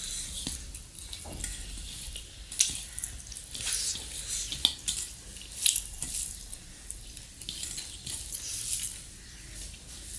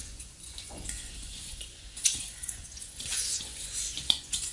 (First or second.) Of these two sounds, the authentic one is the first